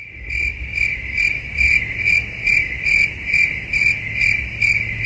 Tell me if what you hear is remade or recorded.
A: recorded